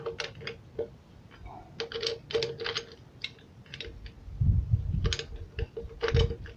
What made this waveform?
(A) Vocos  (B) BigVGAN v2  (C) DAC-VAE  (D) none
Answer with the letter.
D